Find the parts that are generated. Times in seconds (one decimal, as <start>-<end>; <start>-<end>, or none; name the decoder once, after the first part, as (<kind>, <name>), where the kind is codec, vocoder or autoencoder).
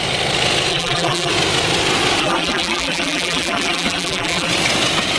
0.7-1.3 (vocoder, BigVGAN v2); 2.2-4.5